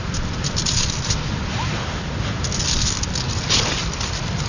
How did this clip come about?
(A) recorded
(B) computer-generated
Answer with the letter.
A